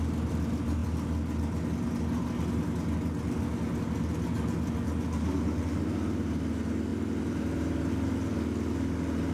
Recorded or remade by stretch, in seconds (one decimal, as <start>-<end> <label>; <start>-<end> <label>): 0.0-6.9 recorded; 6.9-7.9 remade; 7.9-9.3 recorded